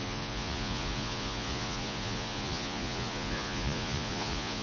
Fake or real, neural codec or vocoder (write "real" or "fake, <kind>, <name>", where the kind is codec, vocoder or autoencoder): fake, vocoder, Vocos